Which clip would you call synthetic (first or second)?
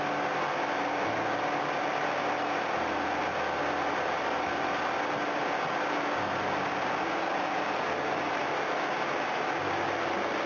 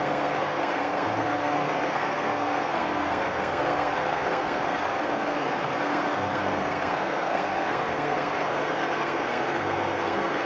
second